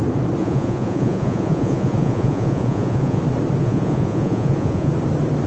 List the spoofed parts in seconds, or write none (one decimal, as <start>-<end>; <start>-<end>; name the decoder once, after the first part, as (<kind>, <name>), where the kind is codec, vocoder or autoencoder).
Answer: 0.4-3.2 (vocoder, Vocos); 3.6-4.9